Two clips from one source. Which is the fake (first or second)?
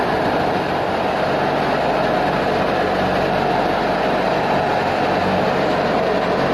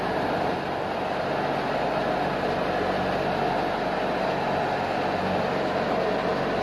first